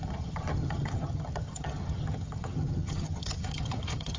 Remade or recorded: remade